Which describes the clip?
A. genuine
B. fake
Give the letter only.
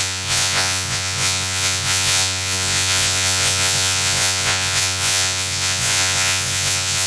B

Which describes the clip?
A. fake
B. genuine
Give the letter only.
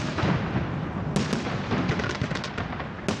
B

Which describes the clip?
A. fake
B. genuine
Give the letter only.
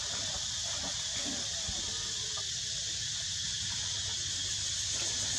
B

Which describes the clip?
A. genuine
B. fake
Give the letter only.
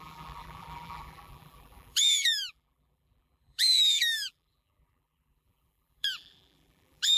B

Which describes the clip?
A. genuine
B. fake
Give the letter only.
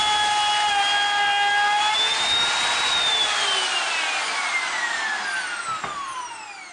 A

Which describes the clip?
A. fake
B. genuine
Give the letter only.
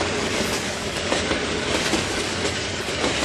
A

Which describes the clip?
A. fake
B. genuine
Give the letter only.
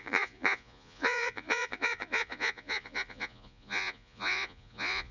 A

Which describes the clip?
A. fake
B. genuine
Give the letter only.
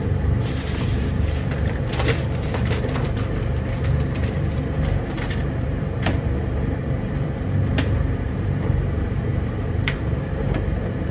A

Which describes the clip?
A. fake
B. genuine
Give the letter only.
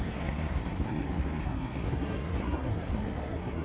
A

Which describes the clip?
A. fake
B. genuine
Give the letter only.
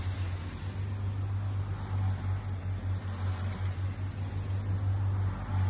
B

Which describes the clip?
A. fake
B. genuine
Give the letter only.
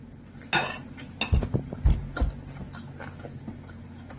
B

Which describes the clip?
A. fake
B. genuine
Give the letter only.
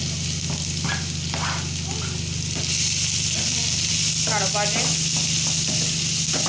B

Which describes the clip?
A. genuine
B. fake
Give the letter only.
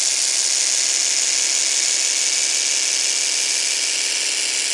A